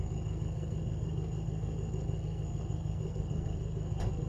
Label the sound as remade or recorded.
remade